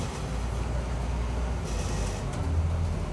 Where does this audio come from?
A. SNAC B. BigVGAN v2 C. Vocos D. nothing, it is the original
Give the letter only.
D